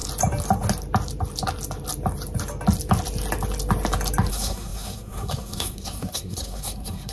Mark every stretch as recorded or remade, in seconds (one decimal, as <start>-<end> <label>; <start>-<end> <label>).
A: 0.0-4.3 recorded; 4.3-7.1 remade